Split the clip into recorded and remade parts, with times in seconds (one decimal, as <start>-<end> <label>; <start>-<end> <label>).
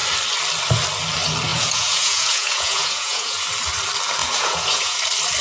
0.0-1.5 recorded; 1.5-3.4 remade; 3.4-4.2 recorded; 4.2-5.0 remade; 5.0-5.4 recorded